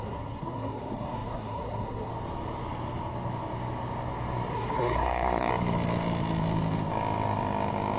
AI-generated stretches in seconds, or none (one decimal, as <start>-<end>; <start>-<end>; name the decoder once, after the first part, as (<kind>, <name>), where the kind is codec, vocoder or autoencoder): 0.0-2.1 (codec, SNAC); 4.5-5.5